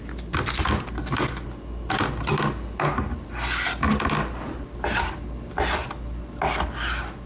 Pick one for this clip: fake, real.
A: real